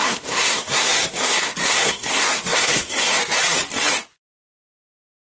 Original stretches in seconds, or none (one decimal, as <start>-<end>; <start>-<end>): 3.2-5.4